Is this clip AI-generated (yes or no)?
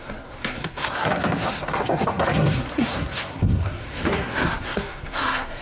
yes